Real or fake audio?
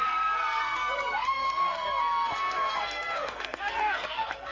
fake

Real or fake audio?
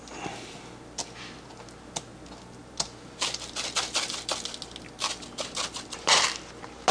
real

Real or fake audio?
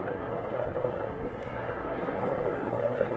fake